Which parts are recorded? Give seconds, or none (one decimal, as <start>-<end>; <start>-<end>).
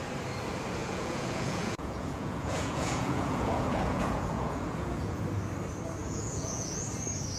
0.0-0.8; 5.2-6.0; 6.7-7.4